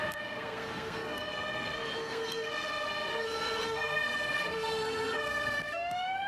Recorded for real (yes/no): no